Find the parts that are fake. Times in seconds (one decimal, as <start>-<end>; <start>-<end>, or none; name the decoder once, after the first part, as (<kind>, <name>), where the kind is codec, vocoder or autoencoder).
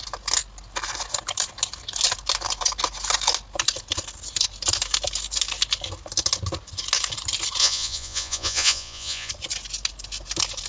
7.6-9.3 (vocoder, Vocos)